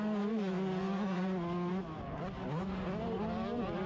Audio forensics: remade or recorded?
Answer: recorded